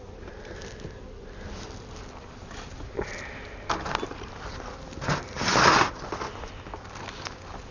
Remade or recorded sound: recorded